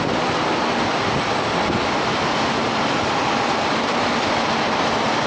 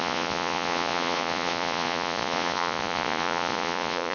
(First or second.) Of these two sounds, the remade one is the second